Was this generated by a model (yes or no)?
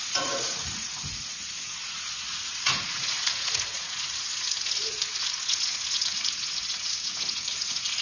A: yes